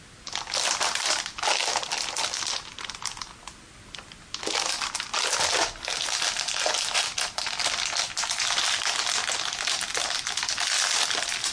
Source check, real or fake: real